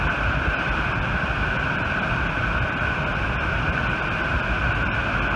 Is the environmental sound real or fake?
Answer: real